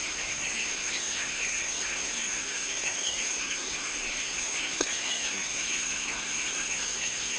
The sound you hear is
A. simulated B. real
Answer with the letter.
A